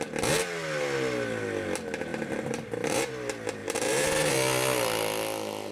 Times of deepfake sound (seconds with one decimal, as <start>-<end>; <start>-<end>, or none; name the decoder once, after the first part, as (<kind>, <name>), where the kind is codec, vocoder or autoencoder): 2.1-3.1 (vocoder, BigVGAN v2); 3.6-4.3